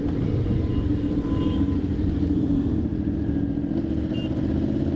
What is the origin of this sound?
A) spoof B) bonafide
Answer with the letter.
B